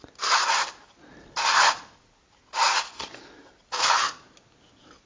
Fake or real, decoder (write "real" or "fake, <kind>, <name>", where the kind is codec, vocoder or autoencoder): real